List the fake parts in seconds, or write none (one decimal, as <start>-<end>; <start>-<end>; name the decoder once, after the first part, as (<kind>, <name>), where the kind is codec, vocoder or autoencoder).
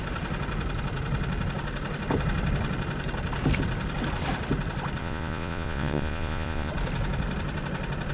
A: 5.0-6.7 (vocoder, Vocos)